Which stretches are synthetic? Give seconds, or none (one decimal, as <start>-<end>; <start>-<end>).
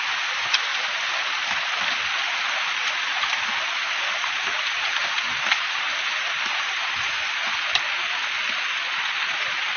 0.0-0.7; 2.4-9.8